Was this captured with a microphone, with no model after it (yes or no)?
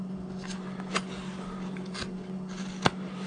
yes